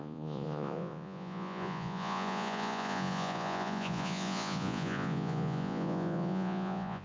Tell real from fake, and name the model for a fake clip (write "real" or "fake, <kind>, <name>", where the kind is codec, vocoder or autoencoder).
fake, vocoder, Vocos